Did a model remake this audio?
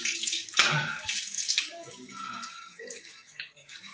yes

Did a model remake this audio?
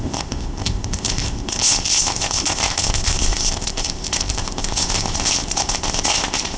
yes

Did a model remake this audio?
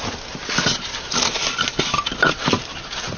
no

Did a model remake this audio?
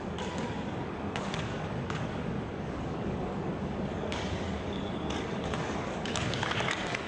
yes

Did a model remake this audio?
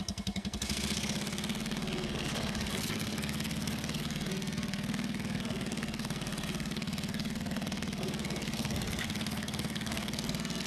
yes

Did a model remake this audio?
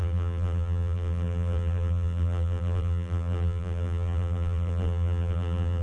yes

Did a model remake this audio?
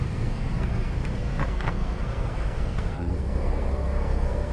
yes